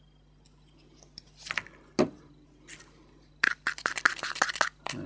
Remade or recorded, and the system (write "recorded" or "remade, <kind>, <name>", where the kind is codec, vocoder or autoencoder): recorded